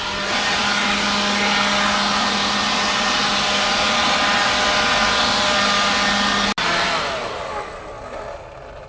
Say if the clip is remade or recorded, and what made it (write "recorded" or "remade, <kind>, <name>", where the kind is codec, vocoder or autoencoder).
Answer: recorded